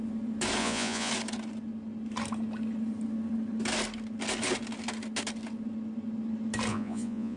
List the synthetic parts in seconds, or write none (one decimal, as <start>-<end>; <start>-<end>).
0.6-1.1; 6.7-7.4